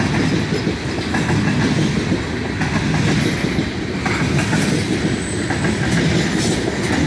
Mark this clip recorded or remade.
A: recorded